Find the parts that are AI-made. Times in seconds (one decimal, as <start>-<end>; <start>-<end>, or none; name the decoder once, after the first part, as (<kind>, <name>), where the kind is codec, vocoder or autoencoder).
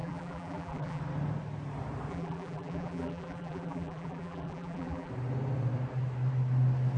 0.0-1.0 (vocoder, BigVGAN v2); 2.1-5.1